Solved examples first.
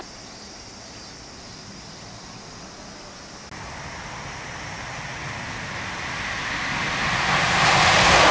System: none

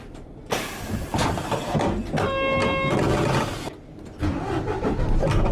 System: none